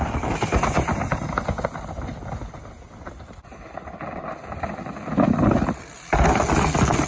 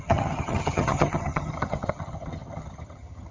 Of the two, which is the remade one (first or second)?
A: second